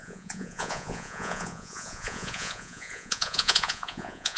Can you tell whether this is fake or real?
fake